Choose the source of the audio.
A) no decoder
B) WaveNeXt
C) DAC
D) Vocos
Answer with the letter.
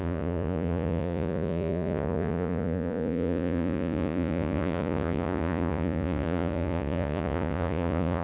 D